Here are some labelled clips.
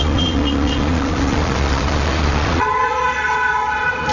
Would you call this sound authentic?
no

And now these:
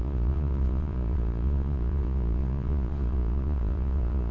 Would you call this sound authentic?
no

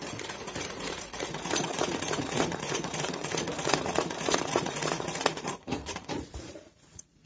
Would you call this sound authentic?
no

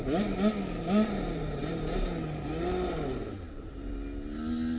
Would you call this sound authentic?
yes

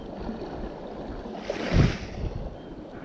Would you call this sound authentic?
yes